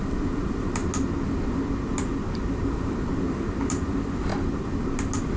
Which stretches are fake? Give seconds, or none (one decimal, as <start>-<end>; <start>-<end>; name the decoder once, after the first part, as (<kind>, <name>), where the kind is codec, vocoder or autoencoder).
0.0-0.8 (vocoder, BigVGAN v2); 2.6-4.3